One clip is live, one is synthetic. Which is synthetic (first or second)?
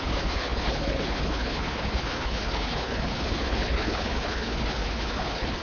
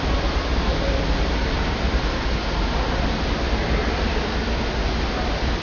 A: first